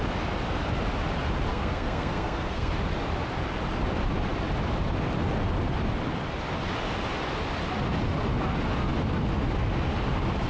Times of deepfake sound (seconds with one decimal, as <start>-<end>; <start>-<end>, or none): 1.5-2.7